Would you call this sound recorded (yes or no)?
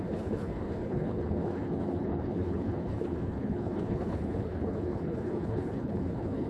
no